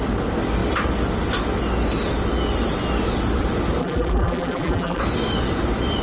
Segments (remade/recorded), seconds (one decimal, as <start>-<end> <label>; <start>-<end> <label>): 0.0-3.8 recorded; 3.8-5.0 remade; 5.0-6.0 recorded